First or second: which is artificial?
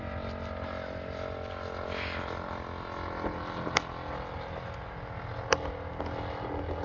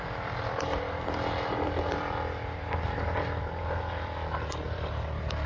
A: second